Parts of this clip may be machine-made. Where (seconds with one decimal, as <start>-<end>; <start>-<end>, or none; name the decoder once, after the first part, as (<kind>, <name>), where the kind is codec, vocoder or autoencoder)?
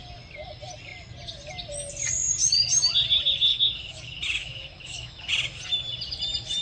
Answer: 3.5-5.3 (autoencoder, DAC-VAE)